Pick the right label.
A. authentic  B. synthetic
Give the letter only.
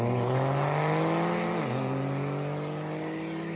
A